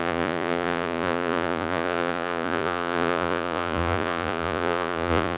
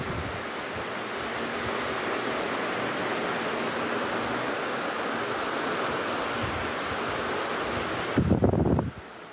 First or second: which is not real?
first